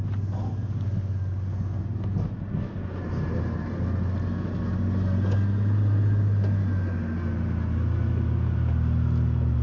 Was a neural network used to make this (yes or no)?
no